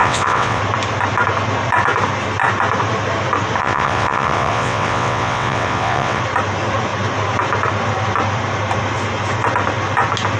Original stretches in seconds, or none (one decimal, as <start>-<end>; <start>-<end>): 0.6-3.6; 6.2-10.4